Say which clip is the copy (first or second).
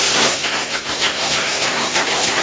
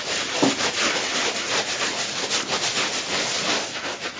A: first